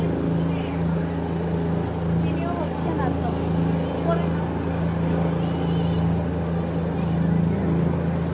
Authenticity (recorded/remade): recorded